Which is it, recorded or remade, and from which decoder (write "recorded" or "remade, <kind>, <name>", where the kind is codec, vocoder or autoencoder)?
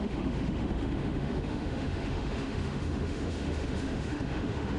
remade, autoencoder, DAC-VAE